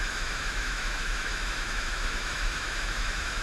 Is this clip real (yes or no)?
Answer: no